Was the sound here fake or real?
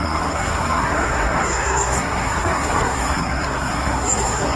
fake